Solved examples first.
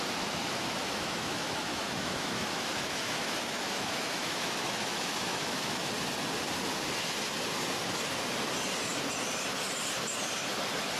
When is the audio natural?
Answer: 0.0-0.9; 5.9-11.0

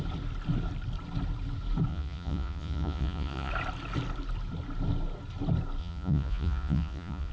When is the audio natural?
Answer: 0.0-1.9; 3.5-5.8

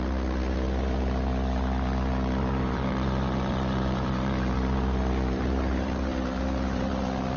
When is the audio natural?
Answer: 0.0-2.6; 7.0-7.4

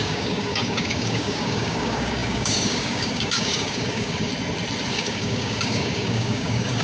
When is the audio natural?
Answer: 4.3-4.9

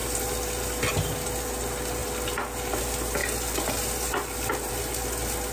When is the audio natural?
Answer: 0.0-5.5